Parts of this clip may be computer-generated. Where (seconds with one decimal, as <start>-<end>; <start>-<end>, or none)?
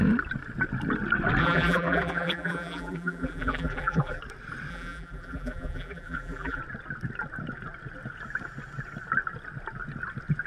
1.4-4.2; 4.7-6.6